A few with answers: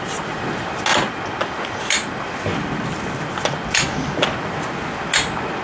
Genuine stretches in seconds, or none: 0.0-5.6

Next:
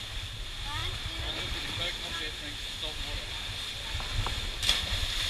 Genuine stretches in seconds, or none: 0.0-5.3

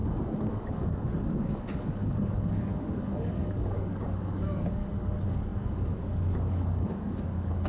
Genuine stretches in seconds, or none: 0.0-0.5

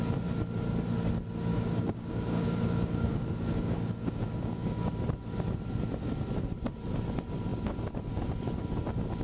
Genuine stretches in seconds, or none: 0.0-1.5; 4.7-9.2

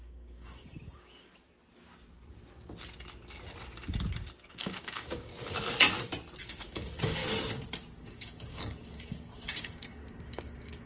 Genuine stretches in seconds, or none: 1.3-4.5; 5.3-6.4; 7.2-8.0

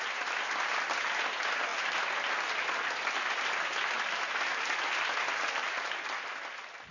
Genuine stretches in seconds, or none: 0.0-6.9